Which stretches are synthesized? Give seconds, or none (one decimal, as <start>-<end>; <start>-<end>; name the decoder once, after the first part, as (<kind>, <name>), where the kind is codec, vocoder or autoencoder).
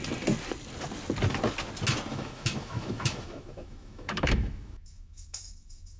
2.1-6.0 (autoencoder, DAC-VAE)